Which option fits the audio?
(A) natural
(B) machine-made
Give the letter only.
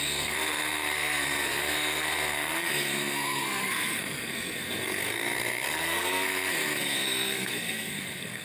B